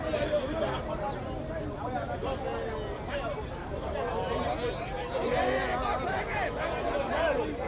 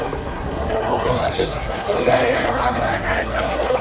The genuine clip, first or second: first